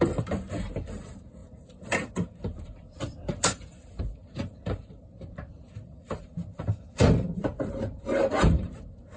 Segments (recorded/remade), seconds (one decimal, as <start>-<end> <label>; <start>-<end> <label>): 0.0-9.2 remade